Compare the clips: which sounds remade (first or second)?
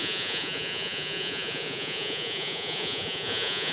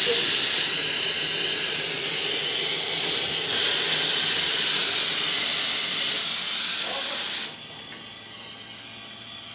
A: first